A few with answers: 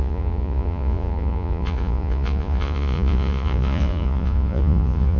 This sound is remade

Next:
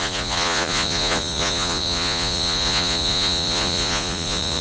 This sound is remade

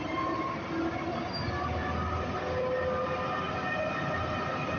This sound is recorded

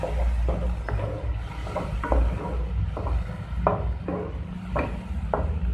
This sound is recorded